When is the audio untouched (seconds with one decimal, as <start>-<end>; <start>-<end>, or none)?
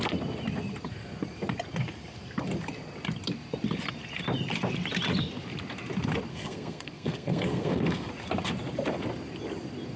0.0-6.3; 8.1-10.0